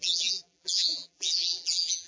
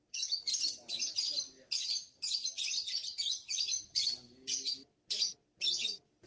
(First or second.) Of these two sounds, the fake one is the first